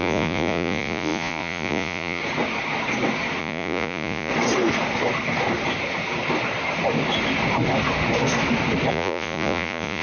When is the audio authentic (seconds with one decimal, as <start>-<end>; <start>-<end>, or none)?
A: 2.2-3.4; 4.3-8.9